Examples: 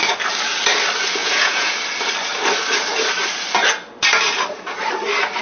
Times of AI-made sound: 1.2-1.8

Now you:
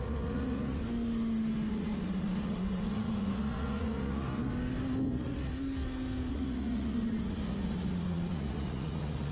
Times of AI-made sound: 0.0-0.8; 1.7-4.5; 5.1-5.5; 6.3-9.3

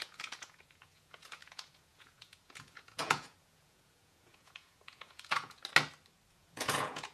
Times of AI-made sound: 0.0-5.6; 6.3-7.1

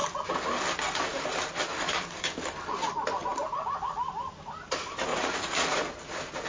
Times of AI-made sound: 5.1-6.0

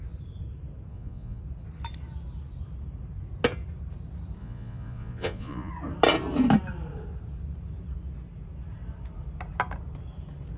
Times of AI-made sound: 0.9-1.4; 4.4-5.7